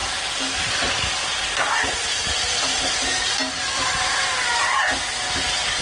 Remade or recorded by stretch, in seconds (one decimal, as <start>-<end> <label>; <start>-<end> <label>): 0.0-5.8 recorded